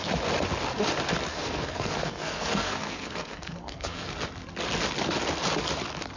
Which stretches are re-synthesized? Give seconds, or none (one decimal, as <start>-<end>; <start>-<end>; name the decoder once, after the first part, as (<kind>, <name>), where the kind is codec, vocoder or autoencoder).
1.3-4.1 (codec, SNAC)